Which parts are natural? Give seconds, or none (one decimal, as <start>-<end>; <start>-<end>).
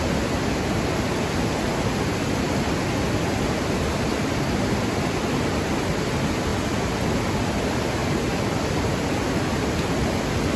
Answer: 0.0-10.6